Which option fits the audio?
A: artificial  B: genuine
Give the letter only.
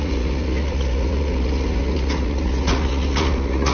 A